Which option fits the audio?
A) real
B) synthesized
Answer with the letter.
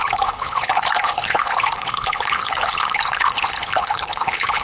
B